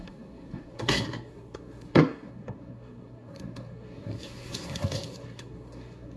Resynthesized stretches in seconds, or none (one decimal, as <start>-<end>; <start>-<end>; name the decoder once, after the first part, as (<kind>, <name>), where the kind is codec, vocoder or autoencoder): 0.0-6.2 (codec, SNAC)